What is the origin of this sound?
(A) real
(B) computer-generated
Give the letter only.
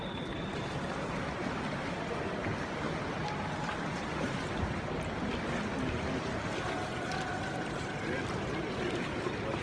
A